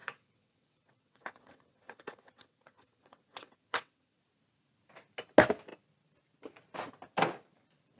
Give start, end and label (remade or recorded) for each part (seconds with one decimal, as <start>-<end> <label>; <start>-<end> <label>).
0.0-4.2 remade; 4.2-8.0 recorded